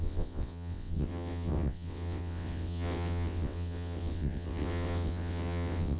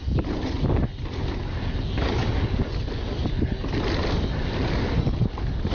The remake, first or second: first